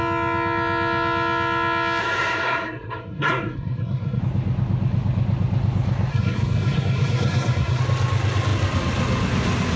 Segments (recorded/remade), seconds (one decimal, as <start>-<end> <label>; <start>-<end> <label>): 0.0-2.0 recorded; 2.0-4.2 remade; 4.2-6.1 recorded; 6.1-7.8 remade; 7.8-9.8 recorded